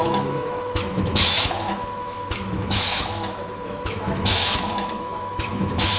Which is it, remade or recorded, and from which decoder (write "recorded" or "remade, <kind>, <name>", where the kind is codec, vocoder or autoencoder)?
remade, autoencoder, DAC-VAE